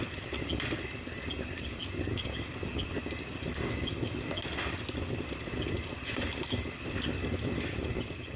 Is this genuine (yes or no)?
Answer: yes